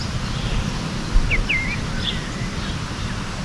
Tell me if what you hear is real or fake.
real